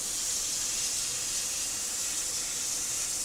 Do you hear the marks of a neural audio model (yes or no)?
no